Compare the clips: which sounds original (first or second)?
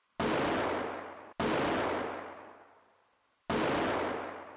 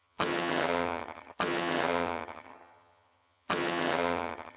first